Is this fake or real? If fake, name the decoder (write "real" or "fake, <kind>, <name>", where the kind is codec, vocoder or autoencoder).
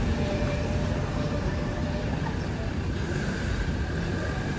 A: fake, vocoder, BigVGAN v2